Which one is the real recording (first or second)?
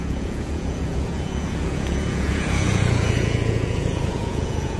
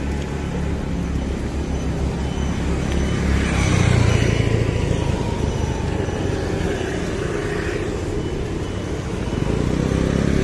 second